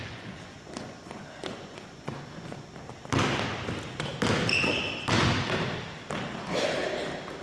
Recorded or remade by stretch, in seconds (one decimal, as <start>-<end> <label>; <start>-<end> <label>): 0.0-2.7 remade; 2.7-7.4 recorded